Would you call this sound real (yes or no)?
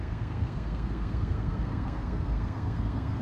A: no